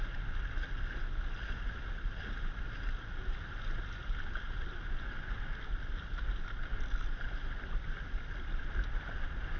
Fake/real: real